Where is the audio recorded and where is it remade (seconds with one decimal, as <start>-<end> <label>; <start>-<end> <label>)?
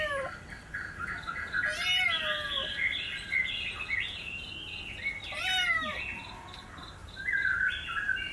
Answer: 0.0-2.7 recorded; 2.7-3.3 remade; 3.3-7.0 recorded; 7.0-7.8 remade; 7.8-8.3 recorded